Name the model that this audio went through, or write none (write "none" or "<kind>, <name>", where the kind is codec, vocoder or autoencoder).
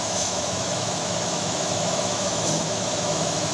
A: autoencoder, DAC-VAE